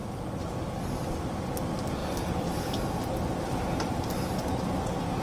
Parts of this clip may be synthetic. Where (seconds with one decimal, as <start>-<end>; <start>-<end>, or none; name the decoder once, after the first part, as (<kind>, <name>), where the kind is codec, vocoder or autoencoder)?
2.0-4.8 (vocoder, BigVGAN v2)